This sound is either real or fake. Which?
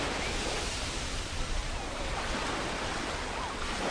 real